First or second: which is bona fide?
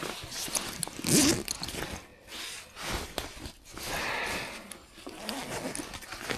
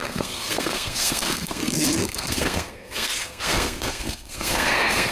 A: first